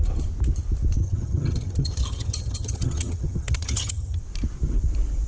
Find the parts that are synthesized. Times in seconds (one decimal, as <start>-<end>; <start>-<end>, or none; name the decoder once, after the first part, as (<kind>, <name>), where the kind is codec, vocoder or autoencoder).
1.0-4.2 (vocoder, HiFi-GAN)